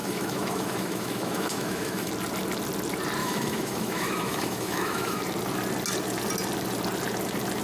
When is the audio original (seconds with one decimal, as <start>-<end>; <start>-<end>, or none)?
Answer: 2.1-3.2; 5.2-7.6